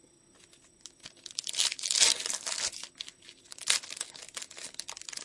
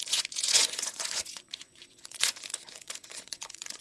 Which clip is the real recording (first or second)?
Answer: first